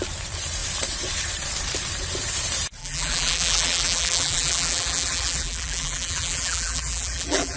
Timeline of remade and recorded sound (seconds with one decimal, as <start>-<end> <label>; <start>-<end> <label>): 0.0-2.8 recorded; 2.8-7.6 remade